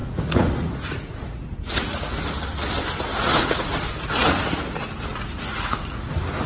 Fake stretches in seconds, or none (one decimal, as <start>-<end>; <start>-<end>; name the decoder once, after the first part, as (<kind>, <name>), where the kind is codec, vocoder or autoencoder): 0.0-2.2 (vocoder, Vocos); 3.1-4.4; 5.1-6.1